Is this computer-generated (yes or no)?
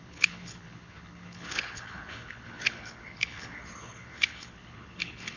yes